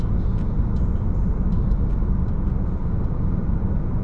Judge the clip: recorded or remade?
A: recorded